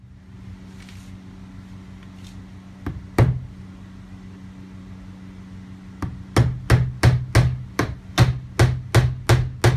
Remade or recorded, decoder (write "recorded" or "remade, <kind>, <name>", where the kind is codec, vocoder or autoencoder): recorded